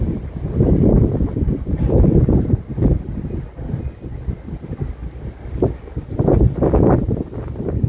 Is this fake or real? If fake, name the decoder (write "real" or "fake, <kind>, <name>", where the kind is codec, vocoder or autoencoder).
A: real